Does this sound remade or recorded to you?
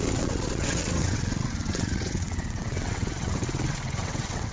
remade